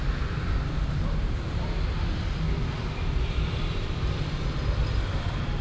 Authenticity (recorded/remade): recorded